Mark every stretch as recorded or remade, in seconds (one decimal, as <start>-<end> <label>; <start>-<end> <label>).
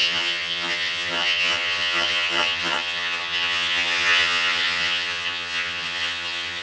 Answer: 0.0-6.6 remade